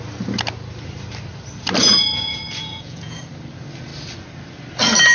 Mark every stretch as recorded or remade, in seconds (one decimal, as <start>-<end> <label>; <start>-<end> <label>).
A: 0.0-1.8 recorded; 1.8-3.2 remade; 3.2-5.1 recorded